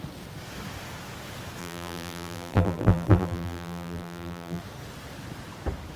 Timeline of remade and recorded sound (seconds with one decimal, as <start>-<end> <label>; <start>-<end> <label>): 0.0-1.6 recorded; 1.6-4.6 remade; 4.6-6.0 recorded